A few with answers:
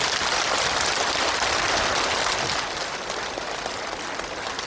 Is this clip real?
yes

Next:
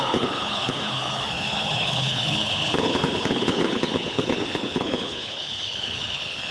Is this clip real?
no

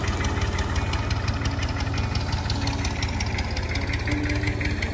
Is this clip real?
yes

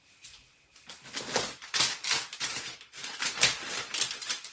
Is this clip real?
yes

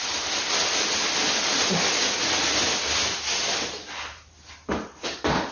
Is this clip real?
yes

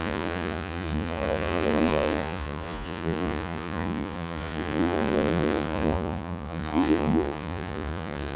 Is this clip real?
no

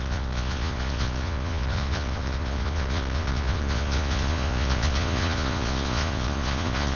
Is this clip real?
no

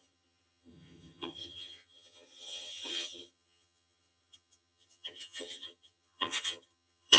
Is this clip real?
no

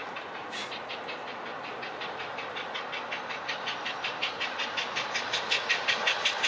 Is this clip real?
yes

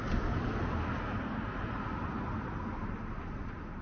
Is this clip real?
yes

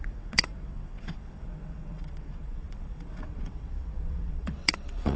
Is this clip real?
no